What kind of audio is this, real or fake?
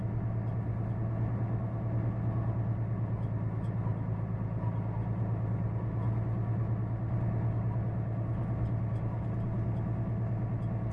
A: real